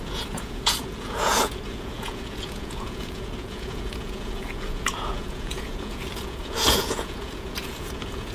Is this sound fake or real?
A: fake